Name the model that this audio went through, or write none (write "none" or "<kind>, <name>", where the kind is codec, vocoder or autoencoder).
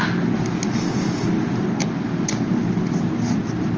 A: none